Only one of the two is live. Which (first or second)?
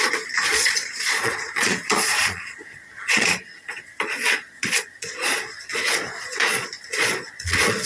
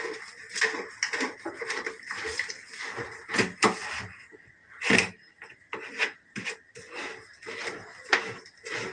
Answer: second